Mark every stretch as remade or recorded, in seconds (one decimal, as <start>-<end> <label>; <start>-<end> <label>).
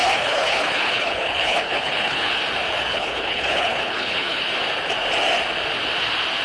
0.0-2.4 remade; 2.4-2.9 recorded; 2.9-4.4 remade; 4.4-6.4 recorded